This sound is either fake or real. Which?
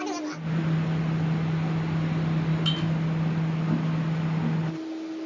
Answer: real